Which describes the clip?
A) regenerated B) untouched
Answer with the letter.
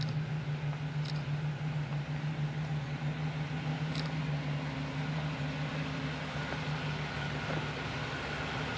B